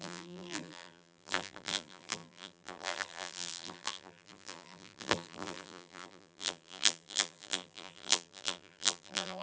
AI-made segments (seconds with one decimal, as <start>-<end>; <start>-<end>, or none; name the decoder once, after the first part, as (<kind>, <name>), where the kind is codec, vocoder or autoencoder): 0.0-9.4 (vocoder, BigVGAN v2)